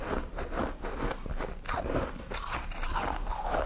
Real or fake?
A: real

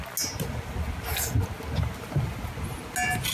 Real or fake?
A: real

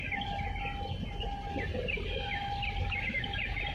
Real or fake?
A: real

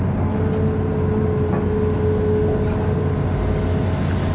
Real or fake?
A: real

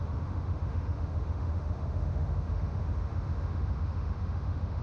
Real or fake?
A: fake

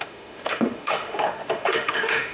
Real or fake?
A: fake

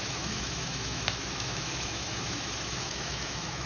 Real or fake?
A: fake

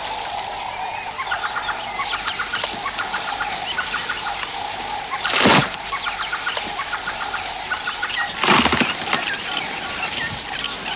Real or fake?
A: real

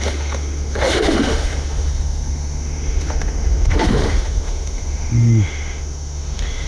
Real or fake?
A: fake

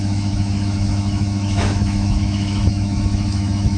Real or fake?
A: fake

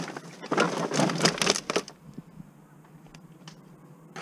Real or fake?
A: real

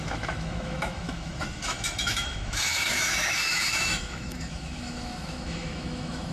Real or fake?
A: fake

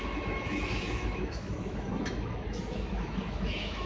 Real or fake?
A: fake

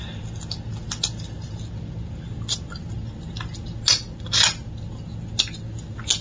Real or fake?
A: real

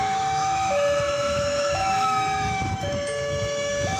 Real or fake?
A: fake